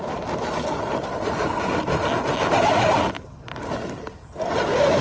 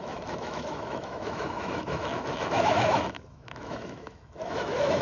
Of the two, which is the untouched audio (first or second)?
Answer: first